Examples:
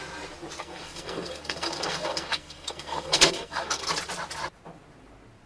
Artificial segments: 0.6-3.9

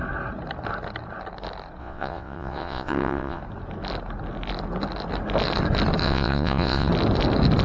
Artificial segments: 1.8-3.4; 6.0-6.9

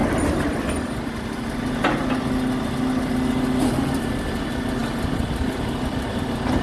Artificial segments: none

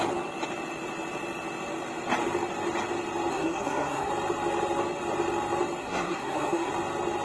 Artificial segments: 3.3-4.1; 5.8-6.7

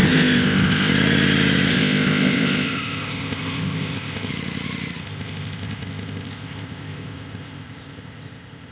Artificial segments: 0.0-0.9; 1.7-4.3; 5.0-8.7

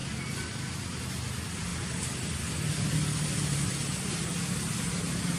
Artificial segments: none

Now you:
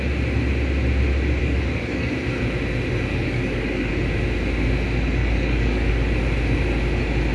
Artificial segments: 1.4-2.1; 3.1-3.9; 5.2-5.9